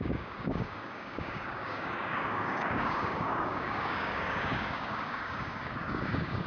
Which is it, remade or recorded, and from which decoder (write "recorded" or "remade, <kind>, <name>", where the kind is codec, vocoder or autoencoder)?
remade, codec, DAC